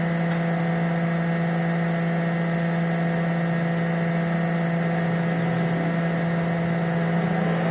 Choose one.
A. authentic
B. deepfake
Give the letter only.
A